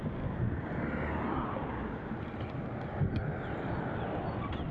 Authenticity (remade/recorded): recorded